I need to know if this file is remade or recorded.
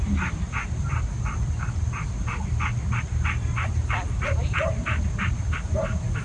recorded